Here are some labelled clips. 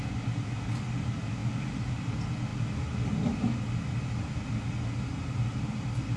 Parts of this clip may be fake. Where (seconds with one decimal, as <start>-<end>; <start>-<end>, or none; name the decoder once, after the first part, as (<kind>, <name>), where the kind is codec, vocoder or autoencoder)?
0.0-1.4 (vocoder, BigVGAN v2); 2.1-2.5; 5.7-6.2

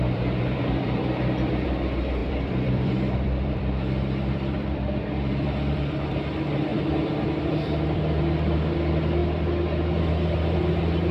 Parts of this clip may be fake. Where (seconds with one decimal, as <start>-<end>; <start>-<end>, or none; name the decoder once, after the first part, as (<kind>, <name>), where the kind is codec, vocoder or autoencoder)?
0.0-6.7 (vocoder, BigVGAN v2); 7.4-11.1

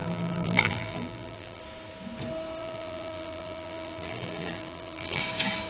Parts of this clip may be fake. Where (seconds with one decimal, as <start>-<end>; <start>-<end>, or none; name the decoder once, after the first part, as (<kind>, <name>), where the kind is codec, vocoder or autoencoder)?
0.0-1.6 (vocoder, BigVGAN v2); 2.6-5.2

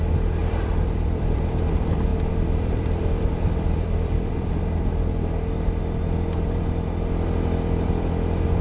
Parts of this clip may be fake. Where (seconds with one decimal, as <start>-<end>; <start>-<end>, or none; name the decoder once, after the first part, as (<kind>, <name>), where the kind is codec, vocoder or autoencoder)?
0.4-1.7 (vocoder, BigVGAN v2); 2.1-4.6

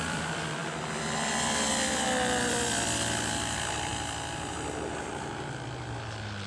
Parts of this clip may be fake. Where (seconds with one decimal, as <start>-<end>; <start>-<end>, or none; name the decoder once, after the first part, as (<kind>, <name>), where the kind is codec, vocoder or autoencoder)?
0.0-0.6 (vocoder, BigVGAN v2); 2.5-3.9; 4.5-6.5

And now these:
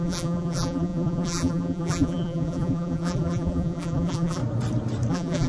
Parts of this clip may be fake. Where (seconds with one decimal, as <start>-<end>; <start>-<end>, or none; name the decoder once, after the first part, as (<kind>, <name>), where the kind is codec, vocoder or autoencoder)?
0.0-4.4 (vocoder, BigVGAN v2); 5.1-5.5

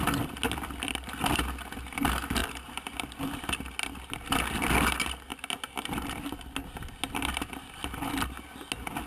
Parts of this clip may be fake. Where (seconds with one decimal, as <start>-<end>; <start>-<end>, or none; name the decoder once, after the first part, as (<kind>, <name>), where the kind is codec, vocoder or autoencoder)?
2.4-3.2 (vocoder, BigVGAN v2)

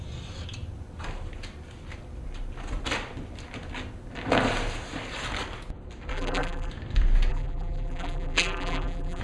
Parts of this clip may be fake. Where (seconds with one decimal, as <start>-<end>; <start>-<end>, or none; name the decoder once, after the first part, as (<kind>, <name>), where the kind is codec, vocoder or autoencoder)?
6.1-6.7 (vocoder, BigVGAN v2); 7.3-9.2